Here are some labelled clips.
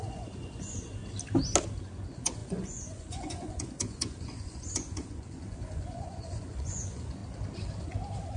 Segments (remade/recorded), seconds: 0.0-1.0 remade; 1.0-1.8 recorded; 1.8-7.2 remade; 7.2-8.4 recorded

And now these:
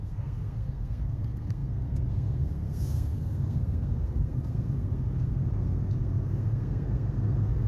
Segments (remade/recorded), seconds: 0.0-7.7 remade

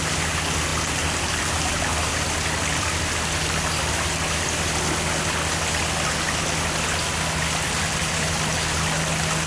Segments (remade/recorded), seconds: 0.0-9.5 recorded

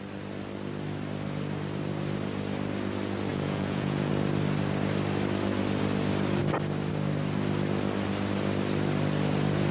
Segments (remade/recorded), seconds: 0.0-3.3 recorded; 3.3-4.1 remade; 4.1-9.7 recorded

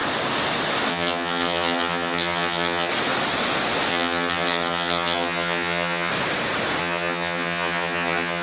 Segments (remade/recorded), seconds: 0.0-0.9 recorded; 0.9-2.9 remade; 2.9-3.9 recorded; 3.9-6.1 remade; 6.1-6.8 recorded; 6.8-8.4 remade